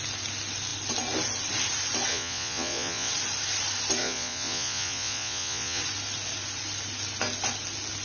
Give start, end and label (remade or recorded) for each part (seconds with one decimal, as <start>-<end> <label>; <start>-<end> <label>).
0.0-2.1 recorded; 2.1-3.1 remade; 3.1-4.0 recorded; 4.0-5.8 remade; 5.8-8.0 recorded